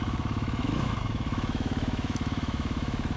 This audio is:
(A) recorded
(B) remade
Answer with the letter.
B